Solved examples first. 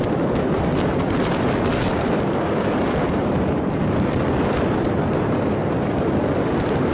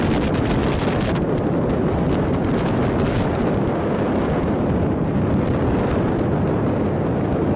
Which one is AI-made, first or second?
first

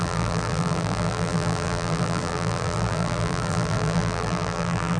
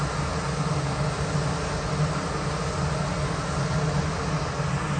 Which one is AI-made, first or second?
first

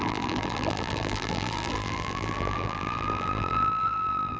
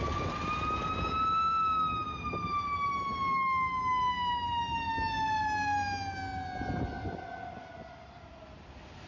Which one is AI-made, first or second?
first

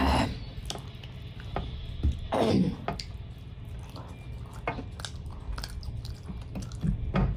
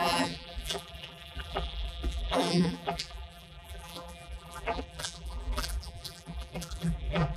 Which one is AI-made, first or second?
second